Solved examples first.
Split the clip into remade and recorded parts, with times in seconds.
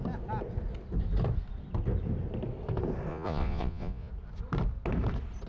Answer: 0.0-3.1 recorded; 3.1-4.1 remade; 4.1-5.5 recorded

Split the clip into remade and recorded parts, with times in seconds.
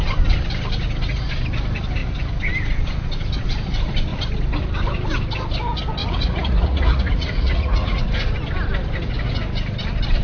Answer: 0.0-6.0 recorded; 6.0-8.0 remade; 8.0-10.2 recorded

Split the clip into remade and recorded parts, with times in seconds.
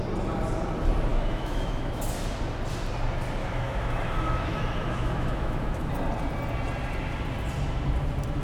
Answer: 0.0-1.1 recorded; 1.1-2.0 remade; 2.0-3.4 recorded; 3.4-5.9 remade; 5.9-8.4 recorded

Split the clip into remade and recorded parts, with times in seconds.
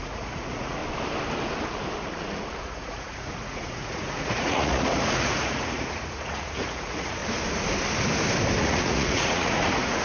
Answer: 0.0-0.8 remade; 0.8-2.6 recorded; 2.6-7.2 remade; 7.2-8.6 recorded; 8.6-10.0 remade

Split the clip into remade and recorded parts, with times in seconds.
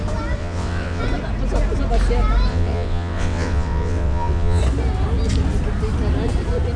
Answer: 0.0-0.4 recorded; 0.4-1.0 remade; 1.0-2.5 recorded; 2.5-4.6 remade; 4.6-6.8 recorded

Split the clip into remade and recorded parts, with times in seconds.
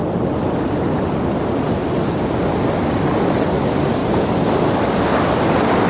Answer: 0.0-5.9 recorded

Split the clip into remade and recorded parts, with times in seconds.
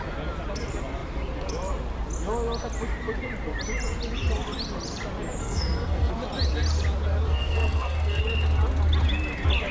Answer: 0.0-5.4 recorded; 5.4-6.1 remade; 6.1-7.3 recorded; 7.3-8.2 remade; 8.2-9.7 recorded